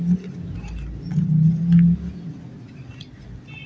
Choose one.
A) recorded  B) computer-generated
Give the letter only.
A